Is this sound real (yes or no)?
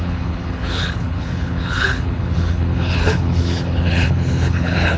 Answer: no